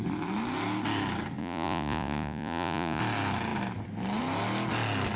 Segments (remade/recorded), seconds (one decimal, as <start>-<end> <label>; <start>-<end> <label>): 0.0-1.4 recorded; 1.4-3.0 remade; 3.0-5.2 recorded